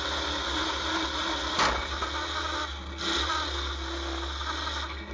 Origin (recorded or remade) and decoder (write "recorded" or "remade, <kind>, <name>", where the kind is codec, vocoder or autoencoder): recorded